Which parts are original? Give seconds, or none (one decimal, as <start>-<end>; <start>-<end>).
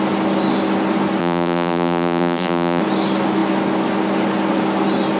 0.0-1.2; 2.8-5.2